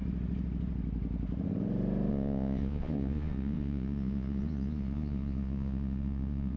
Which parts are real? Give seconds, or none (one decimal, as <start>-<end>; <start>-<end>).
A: 0.0-2.1